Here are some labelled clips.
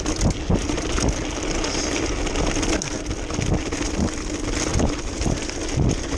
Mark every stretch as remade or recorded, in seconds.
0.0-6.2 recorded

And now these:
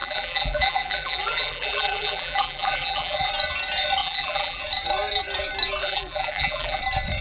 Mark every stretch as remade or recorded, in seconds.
0.0-3.3 remade; 3.3-4.0 recorded; 4.0-4.6 remade; 4.6-5.8 recorded; 5.8-6.8 remade; 6.8-7.2 recorded

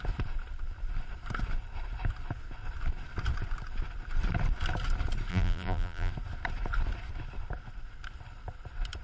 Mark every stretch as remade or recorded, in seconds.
0.0-5.3 recorded; 5.3-6.1 remade; 6.1-9.0 recorded